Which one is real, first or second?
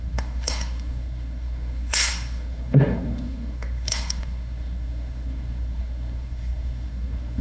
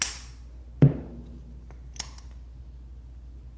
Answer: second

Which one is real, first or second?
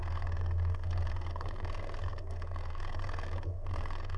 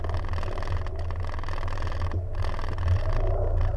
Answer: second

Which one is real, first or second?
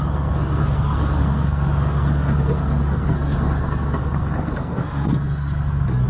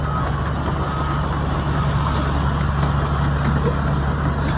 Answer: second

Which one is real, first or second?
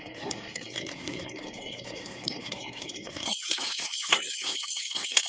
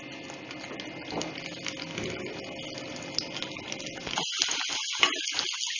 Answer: second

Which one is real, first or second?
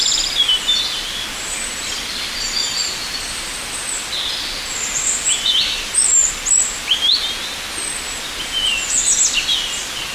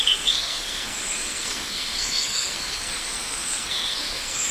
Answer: first